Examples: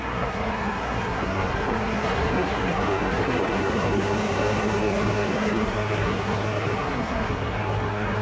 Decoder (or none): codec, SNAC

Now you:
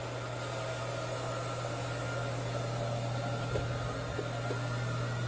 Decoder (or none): none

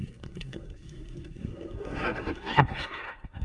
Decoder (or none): codec, SNAC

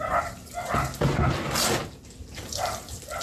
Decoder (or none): none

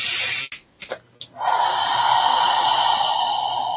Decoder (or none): none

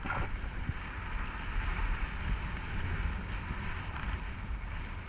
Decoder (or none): none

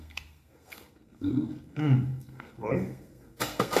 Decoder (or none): codec, SNAC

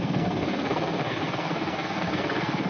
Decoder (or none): codec, SNAC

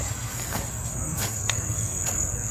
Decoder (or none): codec, SNAC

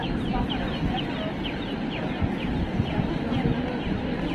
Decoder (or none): none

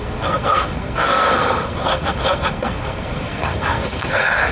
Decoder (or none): codec, SNAC